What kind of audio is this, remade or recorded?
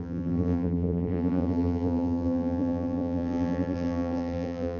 remade